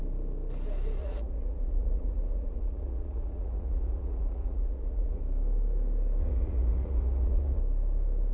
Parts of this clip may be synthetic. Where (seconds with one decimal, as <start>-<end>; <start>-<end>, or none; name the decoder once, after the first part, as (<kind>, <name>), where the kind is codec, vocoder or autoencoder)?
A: 1.0-5.2 (vocoder, Vocos); 6.2-7.6